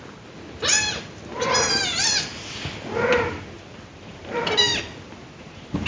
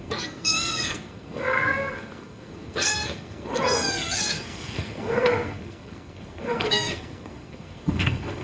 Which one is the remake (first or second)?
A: second